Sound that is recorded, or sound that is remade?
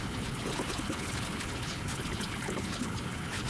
remade